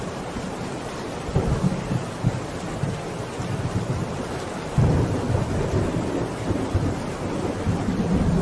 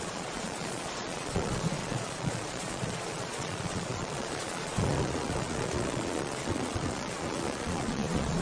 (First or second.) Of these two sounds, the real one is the first